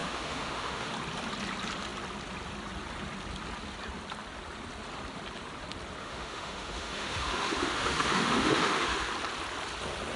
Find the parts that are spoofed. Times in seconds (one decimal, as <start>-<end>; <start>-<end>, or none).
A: 0.0-0.9; 6.0-9.1